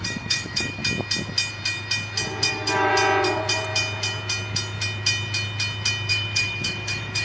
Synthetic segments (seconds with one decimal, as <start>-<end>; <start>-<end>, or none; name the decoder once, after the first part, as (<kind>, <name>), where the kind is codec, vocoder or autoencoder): 0.0-0.8 (autoencoder, DAC-VAE); 2.5-2.9; 6.1-7.2